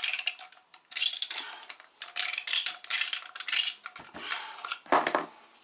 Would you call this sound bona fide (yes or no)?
yes